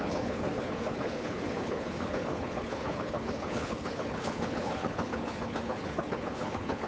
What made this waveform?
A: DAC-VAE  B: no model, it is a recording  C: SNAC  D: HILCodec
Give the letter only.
D